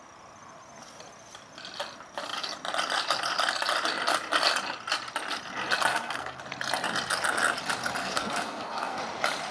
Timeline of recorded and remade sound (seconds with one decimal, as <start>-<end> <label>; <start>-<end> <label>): 0.0-5.9 recorded; 5.9-6.4 remade; 6.4-8.0 recorded; 8.0-9.0 remade; 9.0-9.5 recorded